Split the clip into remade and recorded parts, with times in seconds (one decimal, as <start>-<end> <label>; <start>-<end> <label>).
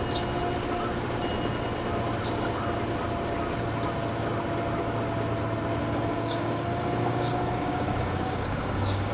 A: 0.0-5.8 recorded; 5.8-9.1 remade